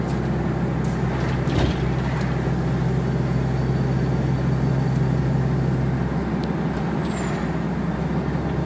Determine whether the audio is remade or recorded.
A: recorded